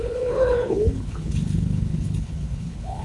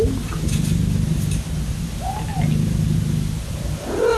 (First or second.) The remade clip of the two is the first